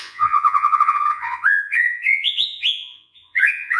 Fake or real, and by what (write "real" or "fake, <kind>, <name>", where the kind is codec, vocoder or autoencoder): fake, vocoder, Vocos